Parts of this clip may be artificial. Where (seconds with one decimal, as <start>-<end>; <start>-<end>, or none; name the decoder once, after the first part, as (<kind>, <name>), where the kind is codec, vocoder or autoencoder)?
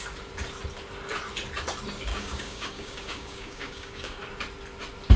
2.1-4.2 (codec, DAC)